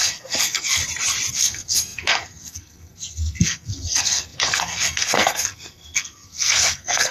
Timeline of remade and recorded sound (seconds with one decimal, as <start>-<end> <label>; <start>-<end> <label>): 0.0-0.8 remade; 0.8-1.3 recorded; 1.3-7.1 remade